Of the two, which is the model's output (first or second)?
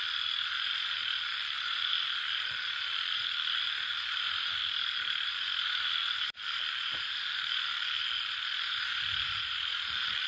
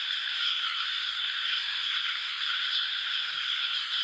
second